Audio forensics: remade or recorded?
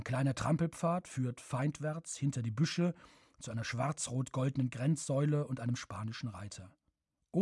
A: recorded